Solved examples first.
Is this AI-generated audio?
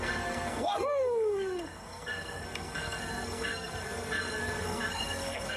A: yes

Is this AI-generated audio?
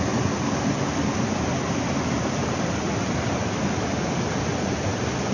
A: no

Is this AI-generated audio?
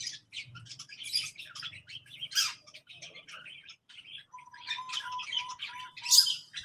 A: yes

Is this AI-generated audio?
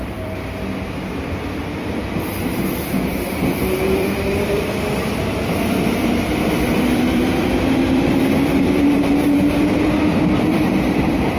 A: yes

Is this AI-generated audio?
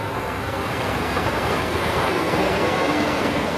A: yes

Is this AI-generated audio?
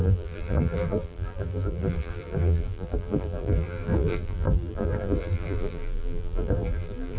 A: yes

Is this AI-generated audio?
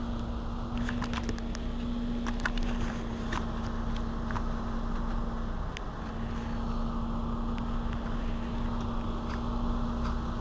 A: no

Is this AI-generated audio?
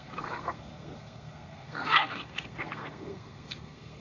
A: yes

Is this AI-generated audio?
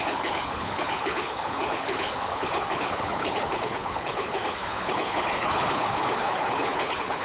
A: yes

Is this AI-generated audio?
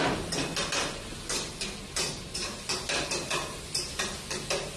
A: no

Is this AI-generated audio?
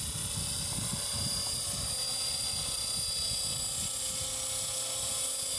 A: no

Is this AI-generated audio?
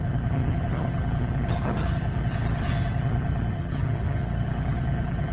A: yes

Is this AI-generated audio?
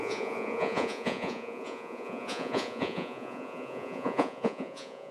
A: yes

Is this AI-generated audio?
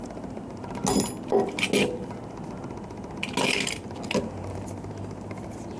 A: no